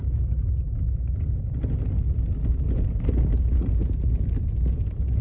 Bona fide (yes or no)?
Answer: yes